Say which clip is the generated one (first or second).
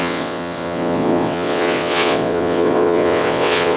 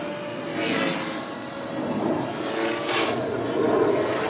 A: first